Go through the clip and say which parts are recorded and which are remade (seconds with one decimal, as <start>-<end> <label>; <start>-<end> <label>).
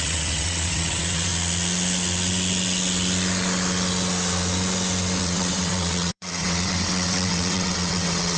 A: 0.0-1.3 remade; 1.3-5.2 recorded; 5.2-8.4 remade